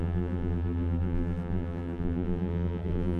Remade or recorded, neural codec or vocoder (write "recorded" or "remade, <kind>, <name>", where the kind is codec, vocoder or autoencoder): remade, vocoder, BigVGAN v2